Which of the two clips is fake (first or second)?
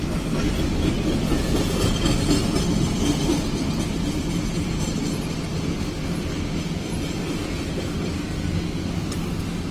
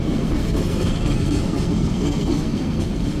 second